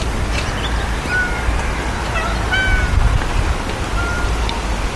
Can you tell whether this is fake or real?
fake